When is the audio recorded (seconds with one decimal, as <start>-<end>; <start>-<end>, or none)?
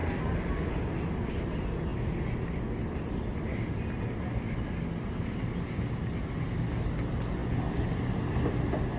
0.0-9.0